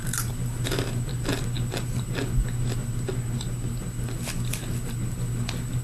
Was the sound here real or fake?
real